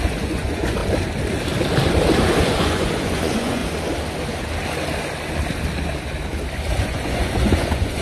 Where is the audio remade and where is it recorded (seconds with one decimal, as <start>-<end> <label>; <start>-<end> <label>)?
0.0-0.8 remade; 0.8-2.4 recorded; 2.4-3.6 remade; 3.6-6.8 recorded; 6.8-8.0 remade